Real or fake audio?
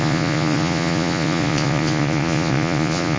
fake